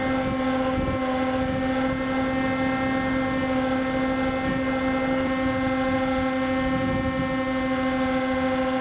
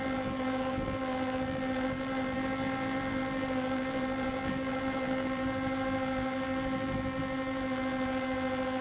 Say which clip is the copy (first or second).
second